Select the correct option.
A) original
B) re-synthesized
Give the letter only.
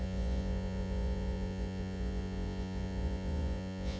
B